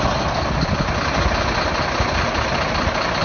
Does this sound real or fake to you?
real